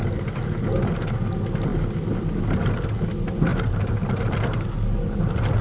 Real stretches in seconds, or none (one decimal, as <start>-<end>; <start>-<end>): 0.0-5.6